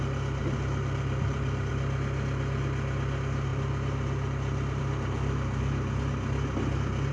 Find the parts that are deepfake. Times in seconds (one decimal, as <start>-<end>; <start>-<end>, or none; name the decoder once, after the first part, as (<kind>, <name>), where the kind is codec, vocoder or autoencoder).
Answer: 0.4-1.7 (vocoder, BigVGAN v2); 3.5-4.8